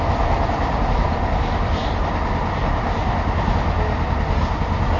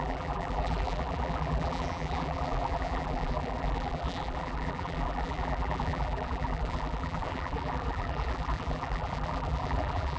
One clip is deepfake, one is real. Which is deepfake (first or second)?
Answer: second